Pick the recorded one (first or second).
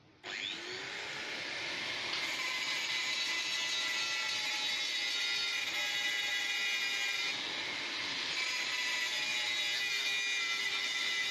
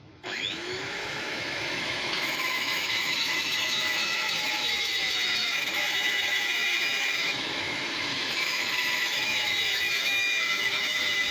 first